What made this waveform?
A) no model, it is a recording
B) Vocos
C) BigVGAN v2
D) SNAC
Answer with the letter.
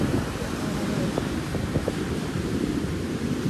C